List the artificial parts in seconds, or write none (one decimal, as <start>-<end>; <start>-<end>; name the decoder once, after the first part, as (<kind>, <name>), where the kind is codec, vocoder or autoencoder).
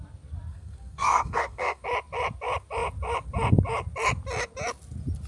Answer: 0.5-1.8 (codec, SNAC)